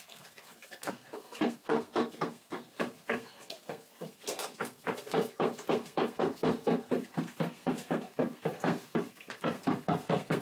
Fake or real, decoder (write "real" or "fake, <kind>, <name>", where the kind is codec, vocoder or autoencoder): fake, codec, SNAC